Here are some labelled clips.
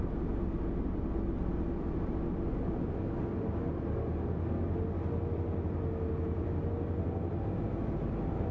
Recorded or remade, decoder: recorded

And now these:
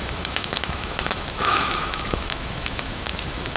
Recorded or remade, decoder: remade, autoencoder, DAC-VAE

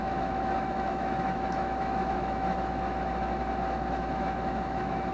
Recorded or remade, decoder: remade, autoencoder, DAC-VAE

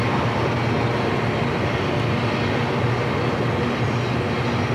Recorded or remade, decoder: recorded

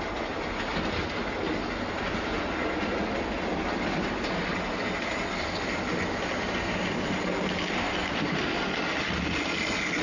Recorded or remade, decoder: recorded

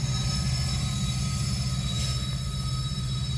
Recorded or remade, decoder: recorded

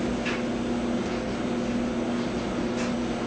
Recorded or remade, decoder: recorded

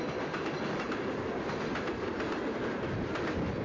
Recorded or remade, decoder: recorded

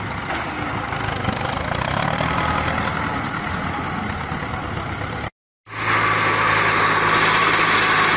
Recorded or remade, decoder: recorded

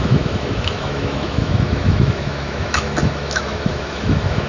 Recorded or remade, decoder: remade, autoencoder, DAC-VAE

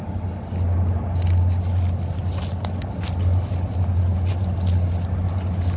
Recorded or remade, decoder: recorded